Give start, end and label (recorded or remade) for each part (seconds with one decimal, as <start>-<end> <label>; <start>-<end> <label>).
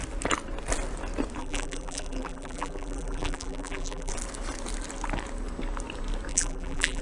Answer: 0.0-1.4 recorded; 1.4-4.1 remade; 4.1-6.3 recorded; 6.3-7.0 remade